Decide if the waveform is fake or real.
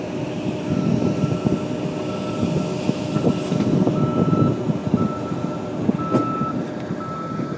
real